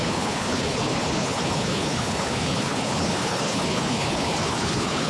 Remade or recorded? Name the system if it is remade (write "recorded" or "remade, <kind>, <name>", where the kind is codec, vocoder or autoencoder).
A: remade, codec, HILCodec